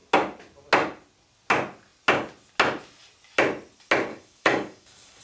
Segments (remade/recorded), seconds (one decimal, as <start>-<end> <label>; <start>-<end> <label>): 0.0-4.1 recorded; 4.1-5.2 remade